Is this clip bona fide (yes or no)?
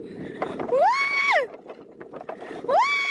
no